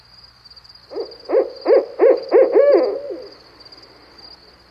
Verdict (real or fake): real